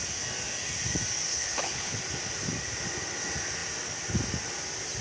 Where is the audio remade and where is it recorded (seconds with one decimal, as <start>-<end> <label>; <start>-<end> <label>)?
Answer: 0.0-1.3 recorded; 1.3-2.0 remade; 2.0-5.0 recorded